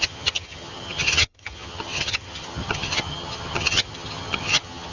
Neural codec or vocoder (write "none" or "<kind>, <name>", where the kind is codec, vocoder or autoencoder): vocoder, HiFi-GAN